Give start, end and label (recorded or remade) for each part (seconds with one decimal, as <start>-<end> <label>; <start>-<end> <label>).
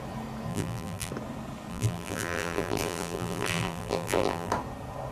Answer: 0.0-0.5 recorded; 0.5-1.1 remade; 1.1-1.7 recorded; 1.7-4.5 remade; 4.5-5.1 recorded